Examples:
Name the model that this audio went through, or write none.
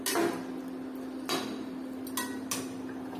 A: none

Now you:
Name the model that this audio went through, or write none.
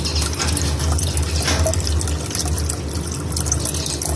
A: none